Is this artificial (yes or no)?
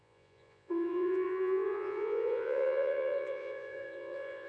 yes